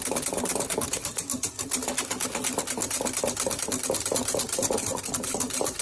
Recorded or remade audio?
recorded